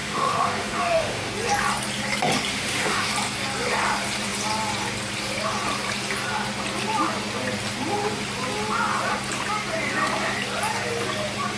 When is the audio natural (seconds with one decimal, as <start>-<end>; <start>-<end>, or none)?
1.3-2.5; 3.1-11.6